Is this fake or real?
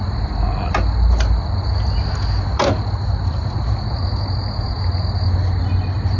real